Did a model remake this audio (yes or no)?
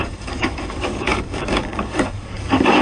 yes